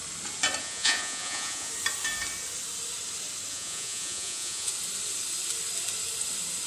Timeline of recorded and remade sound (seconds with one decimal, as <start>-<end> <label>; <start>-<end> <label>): 0.0-0.6 recorded; 0.6-1.7 remade; 1.7-3.5 recorded; 3.5-4.7 remade; 4.7-6.7 recorded